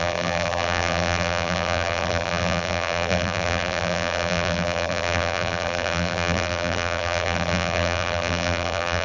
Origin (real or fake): fake